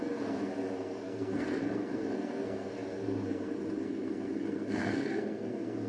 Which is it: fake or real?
fake